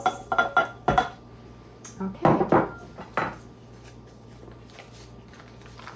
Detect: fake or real real